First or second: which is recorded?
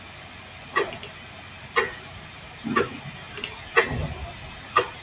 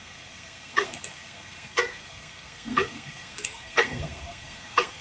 first